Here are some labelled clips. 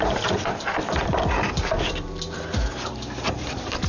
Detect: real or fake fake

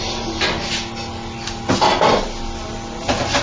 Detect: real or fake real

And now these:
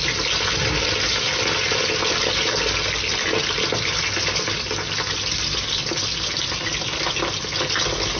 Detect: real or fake real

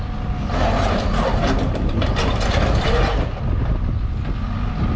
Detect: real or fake real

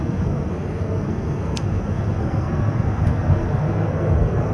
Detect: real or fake fake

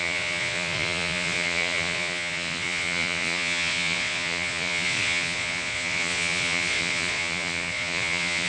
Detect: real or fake fake